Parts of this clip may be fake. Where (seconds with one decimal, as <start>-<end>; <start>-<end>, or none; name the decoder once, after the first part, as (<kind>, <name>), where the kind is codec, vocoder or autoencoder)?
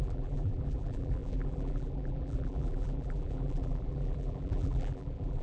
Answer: 0.0-5.4 (vocoder, BigVGAN v2)